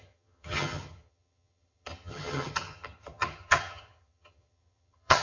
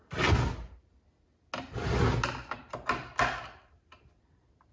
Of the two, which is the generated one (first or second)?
first